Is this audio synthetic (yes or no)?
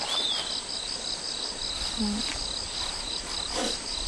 no